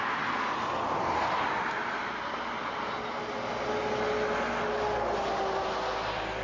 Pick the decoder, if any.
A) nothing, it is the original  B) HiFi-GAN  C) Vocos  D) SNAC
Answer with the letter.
A